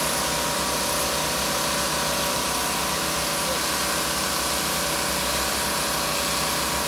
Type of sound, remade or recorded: recorded